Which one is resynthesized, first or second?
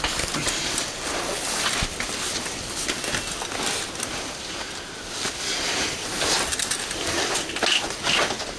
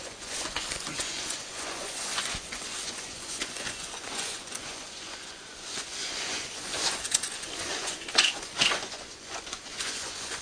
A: second